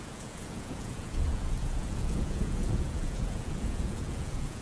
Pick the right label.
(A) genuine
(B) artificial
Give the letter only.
B